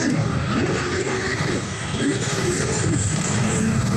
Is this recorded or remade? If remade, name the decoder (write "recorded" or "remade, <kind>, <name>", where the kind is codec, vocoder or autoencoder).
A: remade, codec, DAC